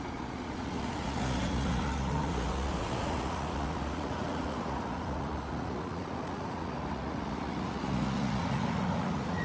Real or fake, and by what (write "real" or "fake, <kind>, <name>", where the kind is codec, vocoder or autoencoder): fake, vocoder, Vocos